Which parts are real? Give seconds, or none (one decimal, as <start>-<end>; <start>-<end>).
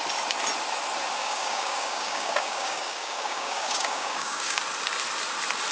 0.0-1.2; 4.6-5.7